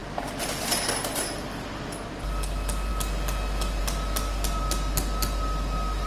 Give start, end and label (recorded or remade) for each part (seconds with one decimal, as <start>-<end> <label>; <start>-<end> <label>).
0.0-1.6 remade; 1.6-6.1 recorded